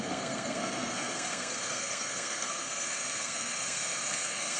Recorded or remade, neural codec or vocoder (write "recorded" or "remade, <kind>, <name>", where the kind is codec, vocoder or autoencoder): remade, codec, SNAC